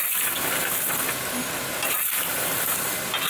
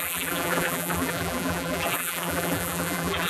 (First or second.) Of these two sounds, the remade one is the second